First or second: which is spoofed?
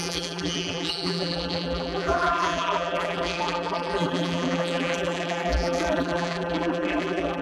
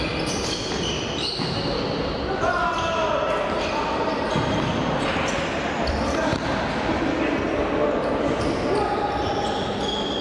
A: first